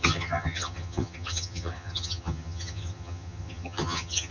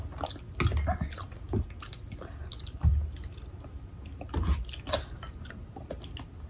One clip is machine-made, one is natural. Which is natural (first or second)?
second